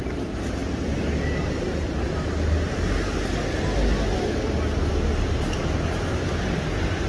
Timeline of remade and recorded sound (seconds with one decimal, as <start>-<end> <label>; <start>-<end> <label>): 0.0-7.1 recorded